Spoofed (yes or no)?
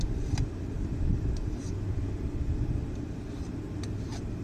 no